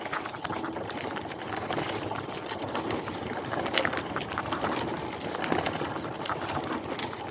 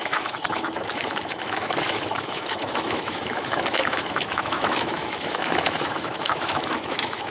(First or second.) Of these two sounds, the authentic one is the first